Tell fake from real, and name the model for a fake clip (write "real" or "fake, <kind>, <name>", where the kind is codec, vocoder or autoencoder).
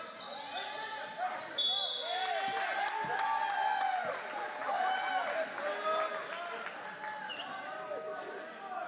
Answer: real